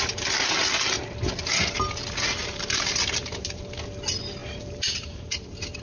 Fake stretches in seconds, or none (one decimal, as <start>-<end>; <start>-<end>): 2.4-3.6; 4.4-5.3